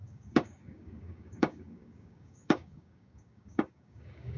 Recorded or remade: remade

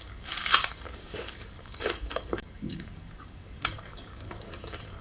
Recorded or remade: remade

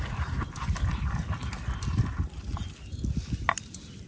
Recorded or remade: recorded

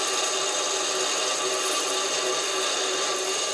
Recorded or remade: recorded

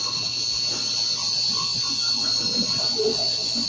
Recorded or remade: recorded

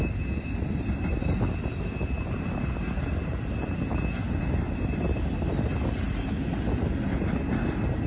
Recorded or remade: recorded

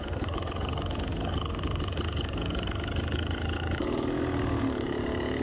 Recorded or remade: remade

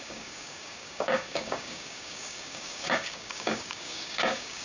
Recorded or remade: remade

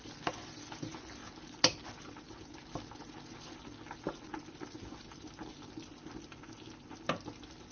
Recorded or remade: recorded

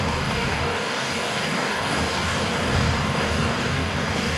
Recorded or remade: remade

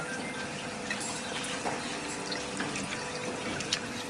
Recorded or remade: recorded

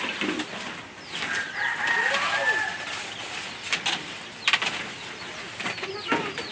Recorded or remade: recorded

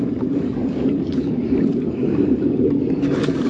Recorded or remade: remade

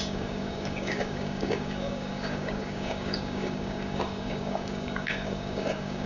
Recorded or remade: remade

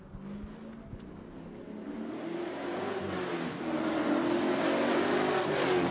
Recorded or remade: recorded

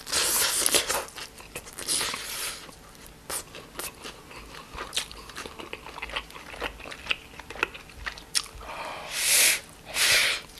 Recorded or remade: recorded